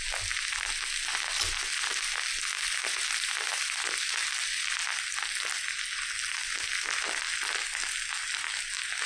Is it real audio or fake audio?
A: real